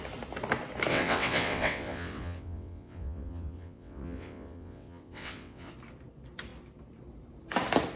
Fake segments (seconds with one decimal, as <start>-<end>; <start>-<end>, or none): 0.9-5.7